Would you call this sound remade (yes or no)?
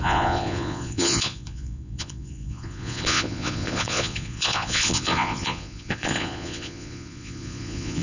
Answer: yes